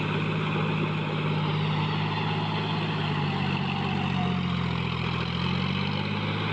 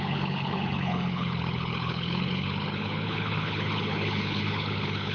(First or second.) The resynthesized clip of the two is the second